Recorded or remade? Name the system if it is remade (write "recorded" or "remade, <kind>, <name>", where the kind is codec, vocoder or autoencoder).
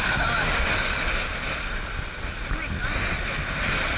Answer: recorded